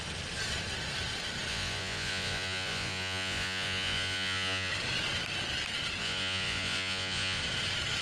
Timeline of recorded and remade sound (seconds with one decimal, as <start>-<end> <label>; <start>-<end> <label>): 0.0-1.5 recorded; 1.5-4.7 remade; 4.7-6.0 recorded; 6.0-7.4 remade; 7.4-8.0 recorded